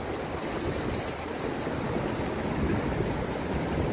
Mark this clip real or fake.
real